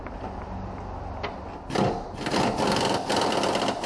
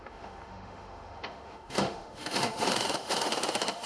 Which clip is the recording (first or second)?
first